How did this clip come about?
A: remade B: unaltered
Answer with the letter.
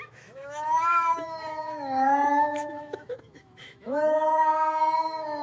A